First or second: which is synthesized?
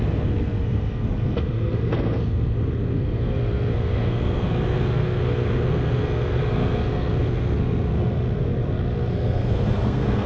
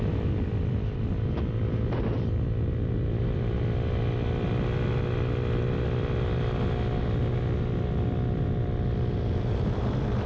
first